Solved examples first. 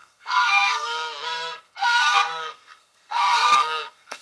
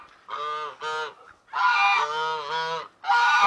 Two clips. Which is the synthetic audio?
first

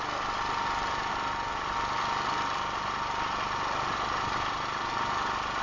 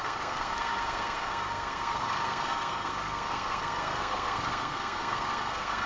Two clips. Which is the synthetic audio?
second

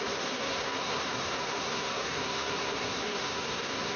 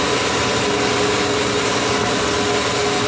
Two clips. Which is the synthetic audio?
first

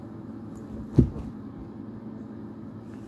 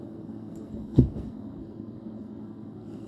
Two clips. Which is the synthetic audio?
second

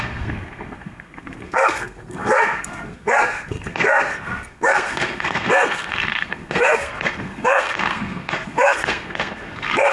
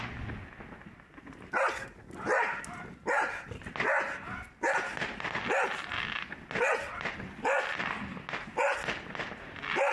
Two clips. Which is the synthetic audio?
first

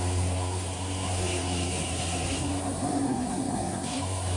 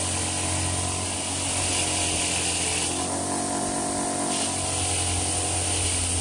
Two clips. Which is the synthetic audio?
first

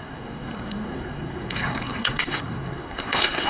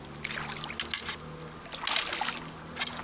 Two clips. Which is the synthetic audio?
first